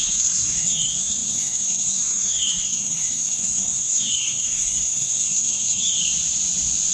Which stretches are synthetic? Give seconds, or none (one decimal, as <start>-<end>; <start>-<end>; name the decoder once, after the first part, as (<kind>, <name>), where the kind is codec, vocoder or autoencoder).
0.0-6.0 (codec, SNAC)